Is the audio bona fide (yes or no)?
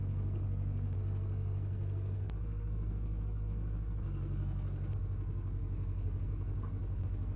no